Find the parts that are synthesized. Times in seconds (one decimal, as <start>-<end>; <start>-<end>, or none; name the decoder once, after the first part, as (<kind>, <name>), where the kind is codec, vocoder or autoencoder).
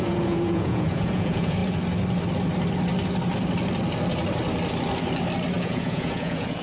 0.0-1.6 (vocoder, Vocos); 5.6-6.6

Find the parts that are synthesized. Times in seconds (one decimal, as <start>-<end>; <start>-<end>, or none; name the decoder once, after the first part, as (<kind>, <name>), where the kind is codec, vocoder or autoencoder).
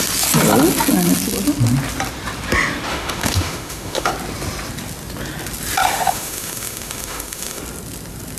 2.9-4.1 (autoencoder, DAC-VAE); 5.8-7.6